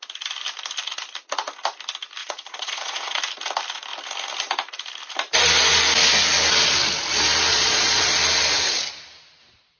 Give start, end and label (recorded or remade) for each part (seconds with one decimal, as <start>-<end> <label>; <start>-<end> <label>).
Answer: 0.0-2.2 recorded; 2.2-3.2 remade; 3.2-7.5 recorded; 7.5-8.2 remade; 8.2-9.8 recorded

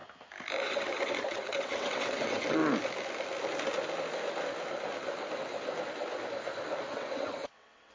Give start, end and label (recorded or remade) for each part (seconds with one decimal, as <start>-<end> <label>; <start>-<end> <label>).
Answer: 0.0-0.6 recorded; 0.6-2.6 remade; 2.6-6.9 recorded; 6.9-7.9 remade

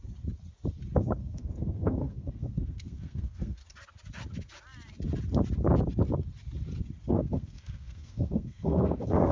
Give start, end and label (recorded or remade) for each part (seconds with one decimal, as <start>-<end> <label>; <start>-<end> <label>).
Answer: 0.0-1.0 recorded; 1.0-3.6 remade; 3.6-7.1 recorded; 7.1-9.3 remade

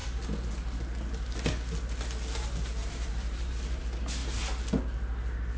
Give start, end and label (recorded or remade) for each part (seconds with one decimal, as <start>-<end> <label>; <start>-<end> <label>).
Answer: 0.0-2.8 recorded; 2.8-3.8 remade; 3.8-5.6 recorded

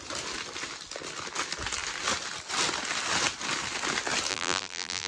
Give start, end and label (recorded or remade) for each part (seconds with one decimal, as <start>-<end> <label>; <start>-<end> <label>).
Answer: 0.0-4.3 recorded; 4.3-5.1 remade